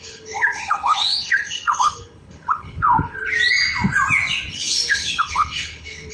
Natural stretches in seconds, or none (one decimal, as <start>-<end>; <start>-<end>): 3.3-4.5